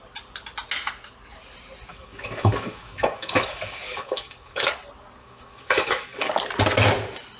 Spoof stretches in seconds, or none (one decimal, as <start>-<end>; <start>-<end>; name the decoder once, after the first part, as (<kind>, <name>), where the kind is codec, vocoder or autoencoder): 1.9-4.7 (codec, DAC); 5.2-6.3